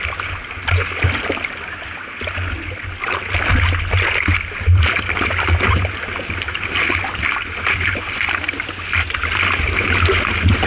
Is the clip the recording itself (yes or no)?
yes